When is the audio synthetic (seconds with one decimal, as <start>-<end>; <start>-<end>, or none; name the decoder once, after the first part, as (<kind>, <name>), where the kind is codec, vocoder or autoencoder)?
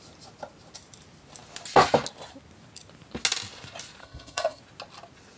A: 4.0-4.6 (codec, SNAC)